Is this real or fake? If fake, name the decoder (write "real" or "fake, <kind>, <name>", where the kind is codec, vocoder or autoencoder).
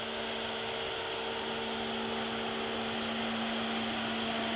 real